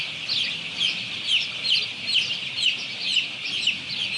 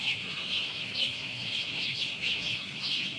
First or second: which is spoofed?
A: second